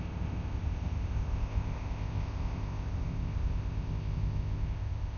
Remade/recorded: remade